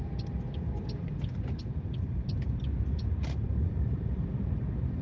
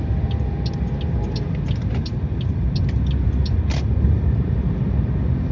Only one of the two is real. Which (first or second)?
second